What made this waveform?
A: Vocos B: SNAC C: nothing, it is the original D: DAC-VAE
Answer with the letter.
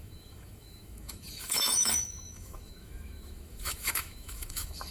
D